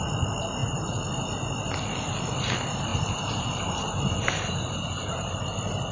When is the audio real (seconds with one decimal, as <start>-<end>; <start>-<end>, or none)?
0.0-0.6; 1.2-2.9; 5.3-5.9